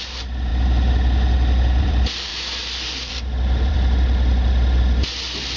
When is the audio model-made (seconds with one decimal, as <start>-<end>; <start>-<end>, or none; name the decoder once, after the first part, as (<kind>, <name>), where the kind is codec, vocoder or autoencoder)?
0.0-0.5 (vocoder, BigVGAN v2); 1.8-2.3; 3.1-5.6